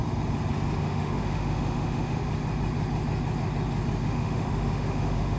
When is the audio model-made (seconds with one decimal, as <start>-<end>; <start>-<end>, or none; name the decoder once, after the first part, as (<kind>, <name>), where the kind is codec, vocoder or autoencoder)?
0.8-2.2 (autoencoder, DAC-VAE); 4.0-5.4